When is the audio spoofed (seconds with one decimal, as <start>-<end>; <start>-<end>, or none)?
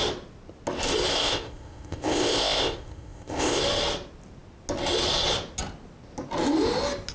1.1-3.6